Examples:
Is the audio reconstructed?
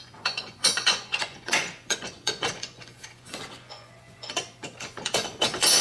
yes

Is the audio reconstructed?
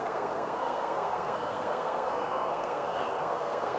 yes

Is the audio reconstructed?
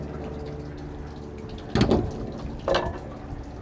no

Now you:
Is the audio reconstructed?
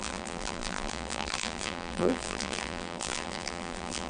yes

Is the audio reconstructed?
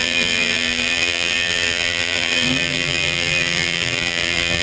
yes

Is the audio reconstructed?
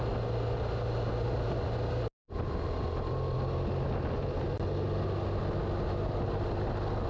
no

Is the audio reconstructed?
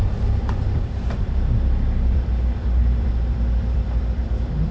yes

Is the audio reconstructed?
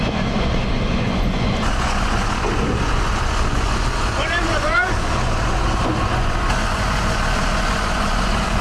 yes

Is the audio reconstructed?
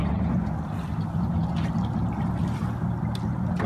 no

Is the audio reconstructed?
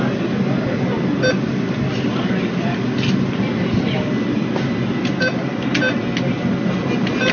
no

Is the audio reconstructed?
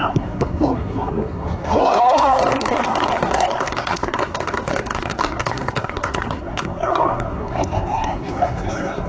yes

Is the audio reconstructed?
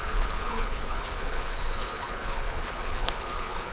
yes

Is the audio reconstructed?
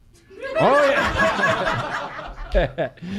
no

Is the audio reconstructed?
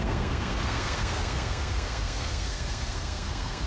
yes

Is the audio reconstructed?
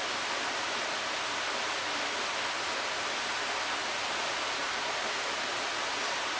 no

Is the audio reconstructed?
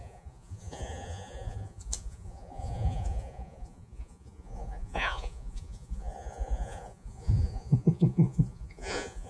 yes